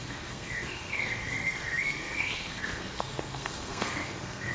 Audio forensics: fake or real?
fake